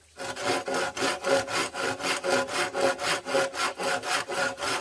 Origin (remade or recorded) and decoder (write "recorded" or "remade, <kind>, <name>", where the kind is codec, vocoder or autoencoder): recorded